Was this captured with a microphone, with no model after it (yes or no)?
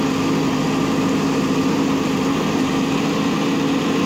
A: yes